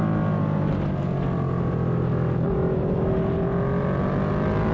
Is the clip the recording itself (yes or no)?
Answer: yes